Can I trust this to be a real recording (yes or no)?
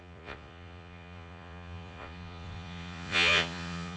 no